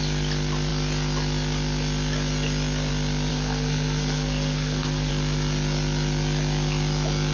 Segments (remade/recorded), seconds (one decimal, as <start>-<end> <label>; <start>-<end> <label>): 0.0-3.3 recorded; 3.3-5.1 remade; 5.1-7.3 recorded